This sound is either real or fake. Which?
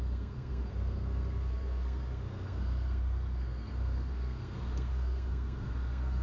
fake